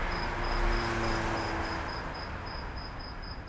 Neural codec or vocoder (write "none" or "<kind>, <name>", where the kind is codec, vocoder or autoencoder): none